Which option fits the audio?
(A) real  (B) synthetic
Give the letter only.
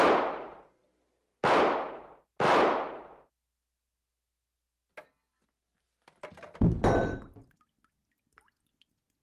A